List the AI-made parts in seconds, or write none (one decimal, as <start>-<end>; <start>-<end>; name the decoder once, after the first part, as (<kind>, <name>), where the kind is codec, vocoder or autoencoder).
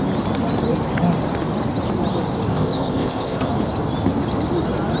2.5-3.5 (codec, ZipCodec)